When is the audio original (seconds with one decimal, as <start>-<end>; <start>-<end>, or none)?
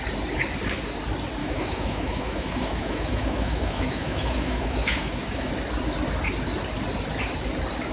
0.0-1.4; 5.5-7.9